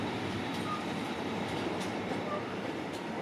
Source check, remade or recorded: remade